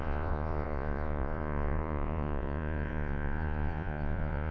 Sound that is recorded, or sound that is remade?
remade